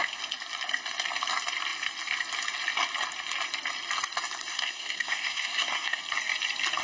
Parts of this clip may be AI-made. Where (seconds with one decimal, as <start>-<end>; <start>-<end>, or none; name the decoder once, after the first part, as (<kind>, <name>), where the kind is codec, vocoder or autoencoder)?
4.5-6.0 (codec, SNAC)